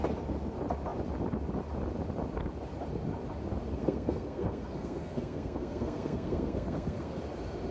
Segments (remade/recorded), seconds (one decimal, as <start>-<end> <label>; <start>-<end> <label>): 0.0-3.7 recorded; 3.7-7.2 remade; 7.2-7.7 recorded